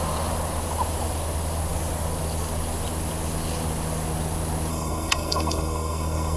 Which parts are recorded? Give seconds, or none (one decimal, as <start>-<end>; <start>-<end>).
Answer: 0.0-4.7